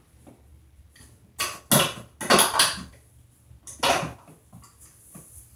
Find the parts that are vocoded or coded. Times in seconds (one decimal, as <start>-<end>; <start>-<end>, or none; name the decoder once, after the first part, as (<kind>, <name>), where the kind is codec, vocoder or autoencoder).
none